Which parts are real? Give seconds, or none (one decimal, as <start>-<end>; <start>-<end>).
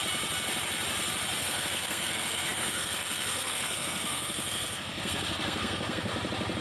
0.0-1.4; 6.1-6.6